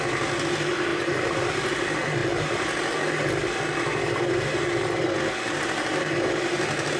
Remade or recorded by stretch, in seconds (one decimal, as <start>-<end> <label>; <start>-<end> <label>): 0.0-0.9 recorded; 0.9-1.5 remade; 1.5-5.9 recorded; 5.9-6.5 remade; 6.5-7.0 recorded